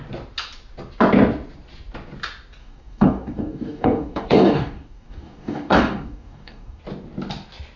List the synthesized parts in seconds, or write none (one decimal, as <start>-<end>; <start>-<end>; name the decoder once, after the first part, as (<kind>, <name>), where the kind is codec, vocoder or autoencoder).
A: 2.6-6.8 (codec, DAC)